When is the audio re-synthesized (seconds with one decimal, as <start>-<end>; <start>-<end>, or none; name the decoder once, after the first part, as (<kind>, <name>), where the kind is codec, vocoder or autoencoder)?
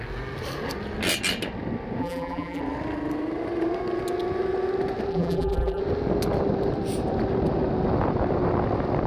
2.0-2.6 (vocoder, BigVGAN v2); 5.1-5.8